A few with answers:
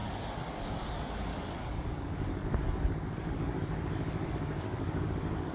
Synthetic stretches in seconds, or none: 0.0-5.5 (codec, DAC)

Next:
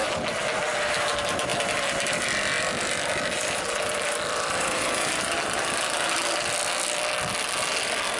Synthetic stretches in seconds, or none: none

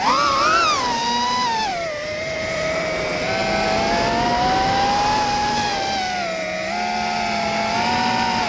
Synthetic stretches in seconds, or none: 1.7-3.0 (vocoder, BigVGAN v2)

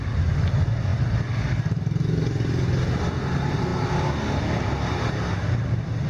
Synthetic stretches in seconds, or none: none

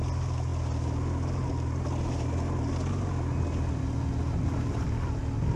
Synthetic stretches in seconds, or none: none